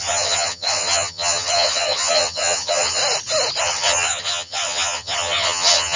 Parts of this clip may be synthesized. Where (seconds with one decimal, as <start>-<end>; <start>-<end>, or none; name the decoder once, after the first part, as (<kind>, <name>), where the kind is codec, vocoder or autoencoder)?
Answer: 0.0-3.0 (vocoder, HiFi-GAN); 3.6-6.0